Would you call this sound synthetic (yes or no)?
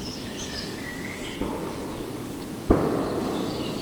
yes